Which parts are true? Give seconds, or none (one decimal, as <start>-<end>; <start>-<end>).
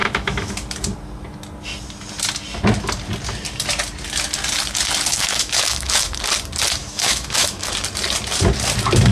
0.5-5.1; 6.2-6.8; 7.7-9.1